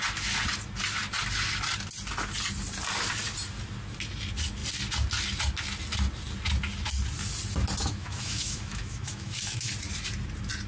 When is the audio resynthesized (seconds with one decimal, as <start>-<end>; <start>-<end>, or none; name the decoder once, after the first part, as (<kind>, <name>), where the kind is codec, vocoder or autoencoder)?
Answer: 7.8-9.7 (autoencoder, DAC-VAE)